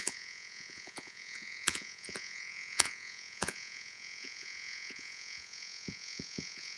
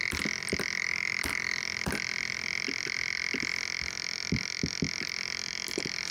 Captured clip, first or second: second